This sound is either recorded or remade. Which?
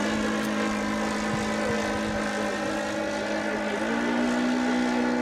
recorded